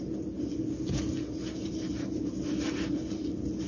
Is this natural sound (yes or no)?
yes